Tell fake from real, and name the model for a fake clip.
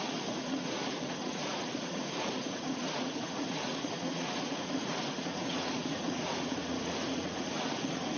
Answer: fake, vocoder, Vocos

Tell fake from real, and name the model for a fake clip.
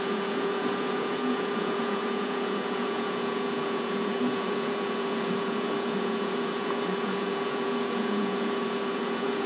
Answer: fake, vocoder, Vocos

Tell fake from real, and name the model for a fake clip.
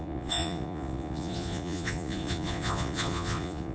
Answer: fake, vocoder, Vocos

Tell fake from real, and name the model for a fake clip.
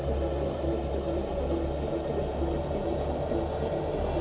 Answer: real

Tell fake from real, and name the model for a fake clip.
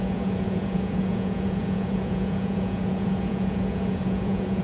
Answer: fake, vocoder, Vocos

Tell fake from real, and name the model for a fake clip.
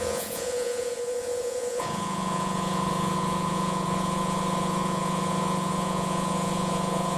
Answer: fake, vocoder, Vocos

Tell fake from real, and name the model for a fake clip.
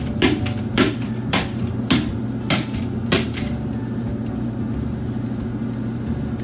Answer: real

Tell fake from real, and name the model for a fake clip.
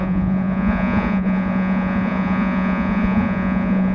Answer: fake, vocoder, Vocos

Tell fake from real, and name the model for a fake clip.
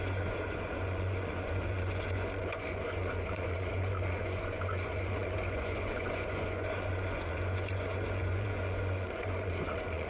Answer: fake, vocoder, Vocos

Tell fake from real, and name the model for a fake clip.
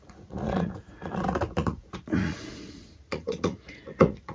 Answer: fake, vocoder, Vocos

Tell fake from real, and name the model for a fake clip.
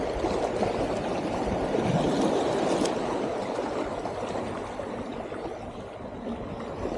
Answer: real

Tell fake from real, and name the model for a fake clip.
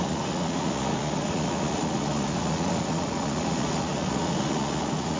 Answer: fake, vocoder, Vocos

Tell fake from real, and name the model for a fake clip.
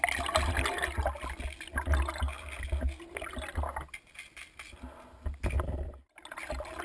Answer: real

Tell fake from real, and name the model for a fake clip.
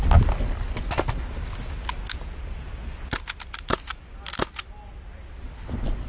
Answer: real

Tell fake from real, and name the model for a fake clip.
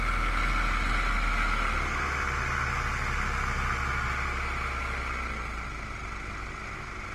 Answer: real